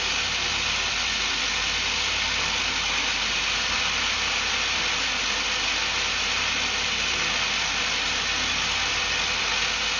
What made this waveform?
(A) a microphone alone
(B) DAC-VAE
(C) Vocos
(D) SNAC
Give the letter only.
A